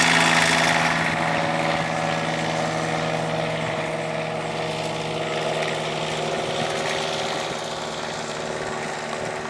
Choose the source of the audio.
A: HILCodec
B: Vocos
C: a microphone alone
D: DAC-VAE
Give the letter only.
C